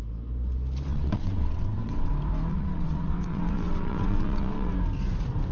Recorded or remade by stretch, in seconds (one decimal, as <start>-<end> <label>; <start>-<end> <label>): 0.0-0.9 recorded; 0.9-2.1 remade; 2.1-2.5 recorded; 2.5-4.7 remade; 4.7-5.5 recorded